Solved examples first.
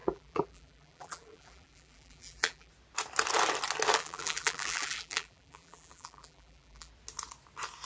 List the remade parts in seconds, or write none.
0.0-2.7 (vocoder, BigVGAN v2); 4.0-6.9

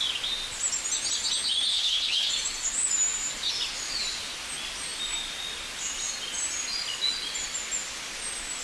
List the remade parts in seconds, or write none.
1.7-2.3 (codec, HILCodec)

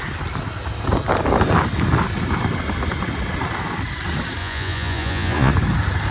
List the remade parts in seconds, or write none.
4.4-5.5 (vocoder, Vocos)

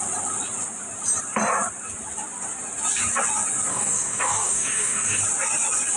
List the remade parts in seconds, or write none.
3.7-5.2 (codec, DAC)

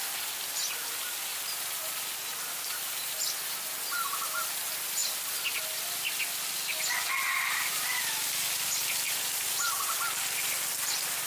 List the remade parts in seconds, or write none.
none

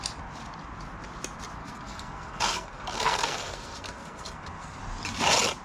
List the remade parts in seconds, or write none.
1.6-4.8 (codec, SNAC)

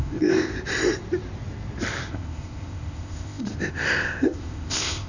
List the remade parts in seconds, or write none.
0.0-0.5 (codec, ZipCodec); 2.1-5.1

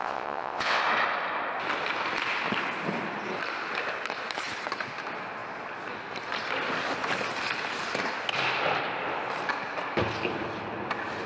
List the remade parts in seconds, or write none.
0.0-0.8 (vocoder, WaveNeXt)